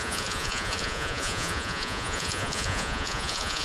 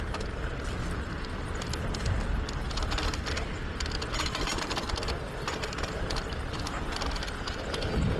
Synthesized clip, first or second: first